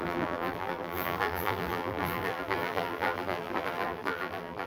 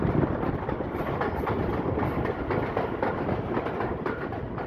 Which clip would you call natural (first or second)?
second